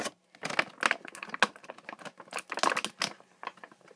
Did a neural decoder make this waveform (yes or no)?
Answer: no